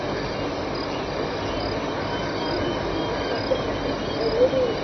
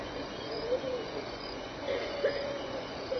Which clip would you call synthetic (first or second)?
second